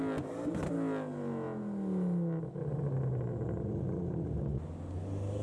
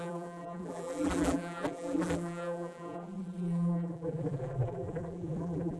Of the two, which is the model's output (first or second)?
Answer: second